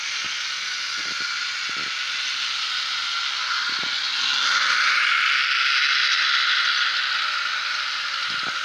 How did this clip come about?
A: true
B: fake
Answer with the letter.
A